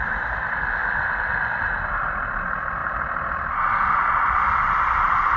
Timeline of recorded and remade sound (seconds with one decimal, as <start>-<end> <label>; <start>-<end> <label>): 0.0-5.4 recorded